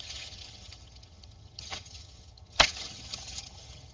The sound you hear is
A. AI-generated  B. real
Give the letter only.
A